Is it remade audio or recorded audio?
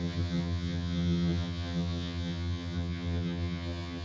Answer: remade